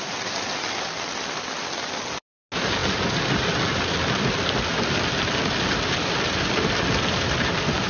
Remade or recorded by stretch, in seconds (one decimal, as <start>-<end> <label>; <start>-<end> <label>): 0.0-7.9 recorded